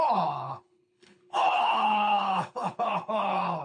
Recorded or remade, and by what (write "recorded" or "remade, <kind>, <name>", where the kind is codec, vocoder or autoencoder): remade, codec, HILCodec